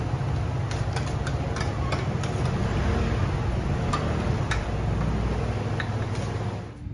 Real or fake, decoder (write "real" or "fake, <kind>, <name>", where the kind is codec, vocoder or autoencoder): real